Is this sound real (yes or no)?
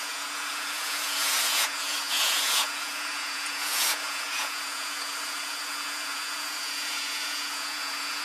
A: no